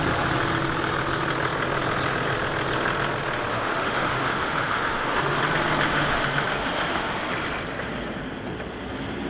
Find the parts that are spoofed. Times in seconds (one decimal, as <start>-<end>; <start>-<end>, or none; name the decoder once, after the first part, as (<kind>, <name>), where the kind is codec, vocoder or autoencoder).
3.5-5.4 (autoencoder, DAC-VAE); 5.9-7.3